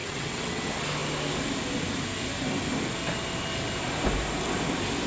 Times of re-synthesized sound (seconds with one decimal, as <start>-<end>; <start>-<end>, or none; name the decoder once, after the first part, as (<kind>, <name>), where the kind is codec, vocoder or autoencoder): 0.0-0.6 (vocoder, WaveNeXt)